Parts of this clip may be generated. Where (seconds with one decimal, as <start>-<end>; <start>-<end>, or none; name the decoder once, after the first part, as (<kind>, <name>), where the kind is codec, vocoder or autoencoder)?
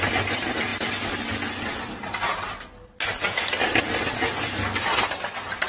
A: none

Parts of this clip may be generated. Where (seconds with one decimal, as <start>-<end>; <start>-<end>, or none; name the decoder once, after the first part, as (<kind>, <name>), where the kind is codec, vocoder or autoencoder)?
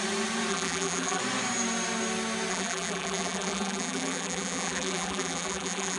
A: 0.5-1.2 (vocoder, BigVGAN v2); 2.5-6.0